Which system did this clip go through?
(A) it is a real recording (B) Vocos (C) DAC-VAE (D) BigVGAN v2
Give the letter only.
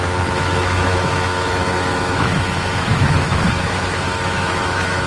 C